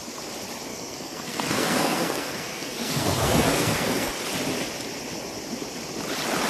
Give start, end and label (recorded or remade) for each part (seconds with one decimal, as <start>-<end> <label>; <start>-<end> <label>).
0.0-0.7 recorded; 0.7-4.1 remade; 4.1-6.5 recorded